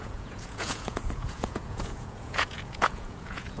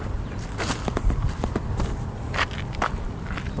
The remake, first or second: first